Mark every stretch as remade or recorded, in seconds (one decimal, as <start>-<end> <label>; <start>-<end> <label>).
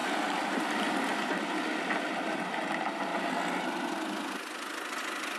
0.0-0.6 remade; 0.6-3.1 recorded; 3.1-3.6 remade; 3.6-5.4 recorded